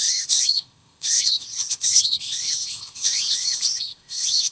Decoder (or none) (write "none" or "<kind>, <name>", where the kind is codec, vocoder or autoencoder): codec, ZipCodec